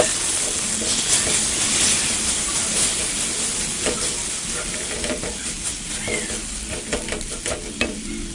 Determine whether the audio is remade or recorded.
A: recorded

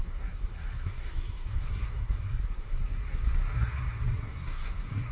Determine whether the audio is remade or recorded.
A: remade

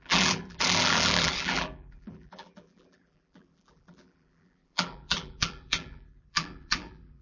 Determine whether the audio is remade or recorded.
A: remade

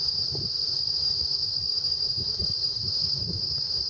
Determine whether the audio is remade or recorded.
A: remade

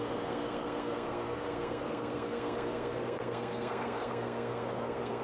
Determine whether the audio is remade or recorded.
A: remade